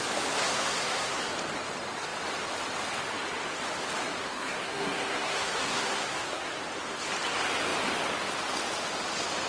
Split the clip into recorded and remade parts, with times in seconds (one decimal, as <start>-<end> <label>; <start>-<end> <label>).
0.0-0.4 recorded; 0.4-1.3 remade; 1.3-4.0 recorded; 4.0-6.6 remade; 6.6-9.5 recorded